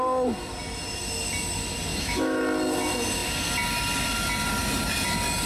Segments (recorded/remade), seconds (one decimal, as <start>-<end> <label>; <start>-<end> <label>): 0.0-1.9 recorded; 1.9-2.4 remade; 2.4-5.5 recorded

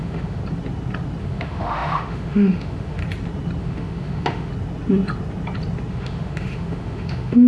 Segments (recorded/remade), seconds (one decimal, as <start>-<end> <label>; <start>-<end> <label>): 0.0-0.4 remade; 0.4-1.2 recorded; 1.2-3.0 remade; 3.0-3.6 recorded; 3.6-4.5 remade; 4.5-5.9 recorded; 5.9-7.5 remade

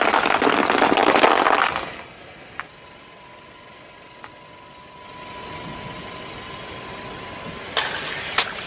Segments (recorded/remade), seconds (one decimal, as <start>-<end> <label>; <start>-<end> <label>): 0.0-8.7 recorded

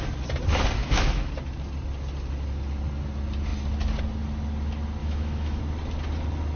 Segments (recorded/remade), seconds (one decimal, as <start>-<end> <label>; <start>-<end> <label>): 0.0-0.8 recorded; 0.8-1.3 remade; 1.3-5.0 recorded; 5.0-5.6 remade; 5.6-6.6 recorded

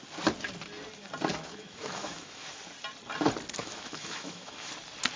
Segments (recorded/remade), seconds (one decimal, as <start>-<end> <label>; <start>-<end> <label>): 0.0-1.3 recorded; 1.3-2.5 remade; 2.5-3.6 recorded; 3.6-4.7 remade; 4.7-5.2 recorded

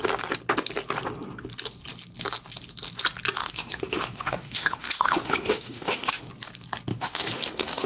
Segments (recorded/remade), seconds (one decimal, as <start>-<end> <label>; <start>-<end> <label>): 0.0-3.4 recorded; 3.4-6.2 remade; 6.2-6.9 recorded; 6.9-7.9 remade